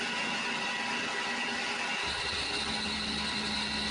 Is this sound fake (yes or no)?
no